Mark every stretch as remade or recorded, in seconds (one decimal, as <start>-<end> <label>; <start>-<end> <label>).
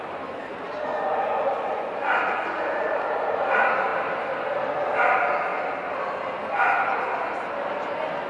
0.0-0.9 recorded; 0.9-3.1 remade; 3.1-8.3 recorded